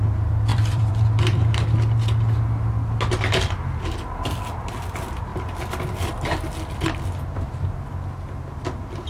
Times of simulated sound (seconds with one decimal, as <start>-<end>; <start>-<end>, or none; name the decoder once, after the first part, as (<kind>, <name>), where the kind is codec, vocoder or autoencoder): 0.5-1.5 (vocoder, BigVGAN v2); 5.3-6.1